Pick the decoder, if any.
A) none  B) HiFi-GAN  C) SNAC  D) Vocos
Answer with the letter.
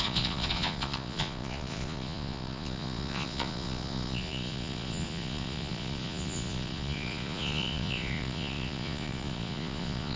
D